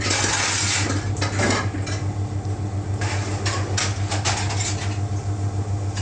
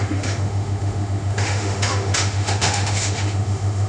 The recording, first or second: first